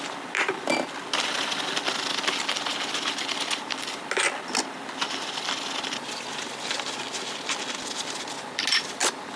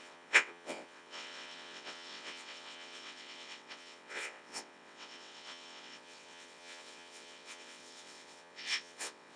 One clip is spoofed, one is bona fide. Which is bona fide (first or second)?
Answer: first